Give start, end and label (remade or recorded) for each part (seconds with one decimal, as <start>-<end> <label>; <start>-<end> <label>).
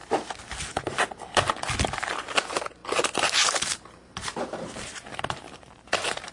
0.0-2.8 recorded; 2.8-4.4 remade; 4.4-5.1 recorded; 5.1-6.3 remade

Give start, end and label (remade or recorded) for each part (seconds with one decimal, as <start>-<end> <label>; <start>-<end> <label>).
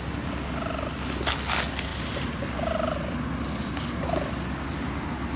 0.0-5.4 recorded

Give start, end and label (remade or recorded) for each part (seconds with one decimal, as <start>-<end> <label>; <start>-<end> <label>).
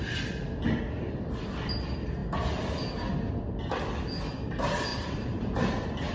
0.0-4.9 recorded; 4.9-6.1 remade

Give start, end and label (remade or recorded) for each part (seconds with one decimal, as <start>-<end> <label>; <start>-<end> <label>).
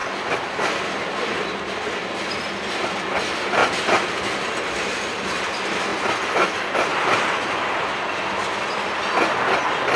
0.0-2.0 remade; 2.0-3.6 recorded; 3.6-5.3 remade; 5.3-6.9 recorded; 6.9-7.7 remade; 7.7-10.0 recorded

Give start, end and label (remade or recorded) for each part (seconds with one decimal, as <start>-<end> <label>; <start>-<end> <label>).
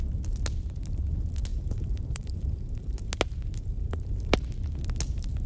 0.0-1.5 recorded; 1.5-3.1 remade; 3.1-3.6 recorded; 3.6-4.3 remade; 4.3-5.5 recorded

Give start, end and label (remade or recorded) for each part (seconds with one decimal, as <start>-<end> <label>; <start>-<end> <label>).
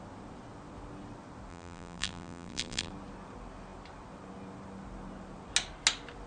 0.0-1.5 recorded; 1.5-2.9 remade; 2.9-6.3 recorded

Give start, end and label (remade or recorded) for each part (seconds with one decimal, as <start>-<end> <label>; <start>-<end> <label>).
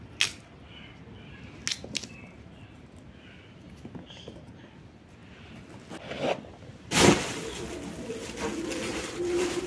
0.0-8.9 recorded; 8.9-9.7 remade